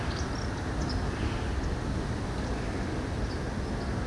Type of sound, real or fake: real